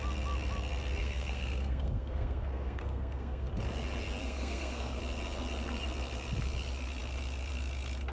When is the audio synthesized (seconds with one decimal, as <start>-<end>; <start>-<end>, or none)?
1.0-3.5; 4.2-5.0

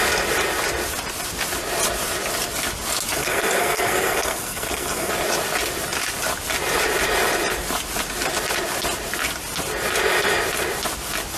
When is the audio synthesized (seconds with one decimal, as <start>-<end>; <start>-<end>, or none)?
3.2-5.1